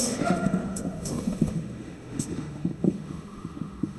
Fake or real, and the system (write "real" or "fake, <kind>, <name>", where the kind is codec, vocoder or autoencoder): fake, autoencoder, DAC-VAE